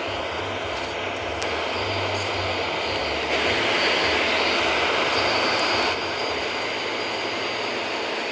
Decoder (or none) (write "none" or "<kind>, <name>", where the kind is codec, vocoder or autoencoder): none